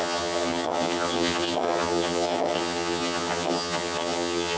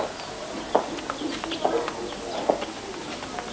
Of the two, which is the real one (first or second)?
second